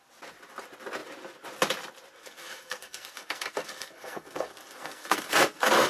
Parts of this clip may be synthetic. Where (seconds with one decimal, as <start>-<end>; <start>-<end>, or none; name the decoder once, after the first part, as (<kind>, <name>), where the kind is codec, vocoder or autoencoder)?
2.2-5.9 (codec, SNAC)